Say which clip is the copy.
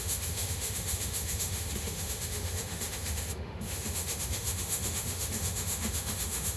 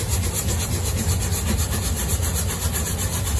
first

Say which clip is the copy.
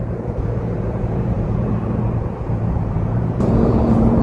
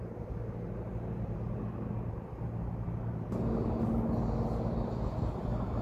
first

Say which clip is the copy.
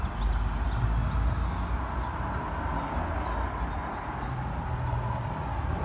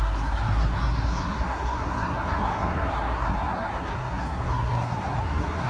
second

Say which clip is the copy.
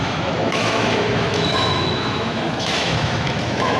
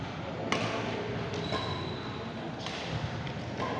first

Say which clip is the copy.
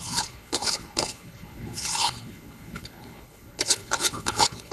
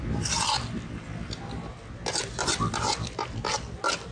first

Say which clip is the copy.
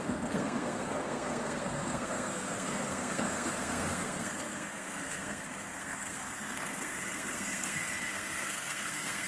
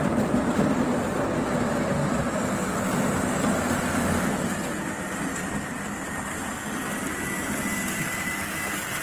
first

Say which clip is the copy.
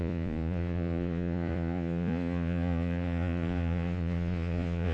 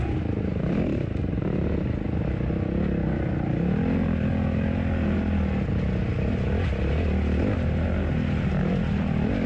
first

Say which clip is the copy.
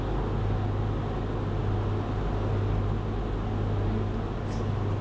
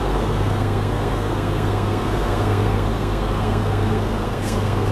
second